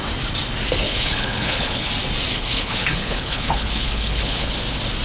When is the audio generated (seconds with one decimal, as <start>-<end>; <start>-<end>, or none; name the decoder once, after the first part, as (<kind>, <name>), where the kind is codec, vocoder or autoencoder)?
0.8-1.9 (codec, HILCodec); 2.3-4.5